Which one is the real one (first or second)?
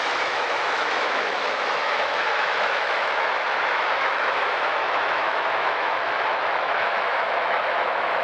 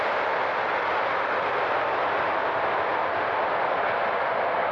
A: second